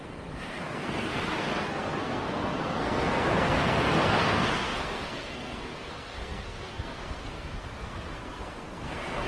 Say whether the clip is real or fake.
fake